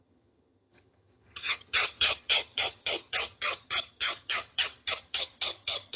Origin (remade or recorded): remade